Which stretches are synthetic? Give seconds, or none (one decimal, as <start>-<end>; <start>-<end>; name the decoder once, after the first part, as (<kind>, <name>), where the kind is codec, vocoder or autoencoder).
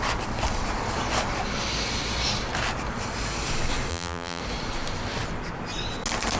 3.9-4.4 (vocoder, BigVGAN v2)